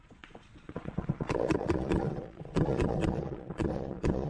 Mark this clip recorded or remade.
remade